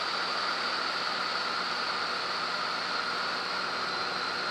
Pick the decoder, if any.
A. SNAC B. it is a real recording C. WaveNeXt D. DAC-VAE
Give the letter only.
B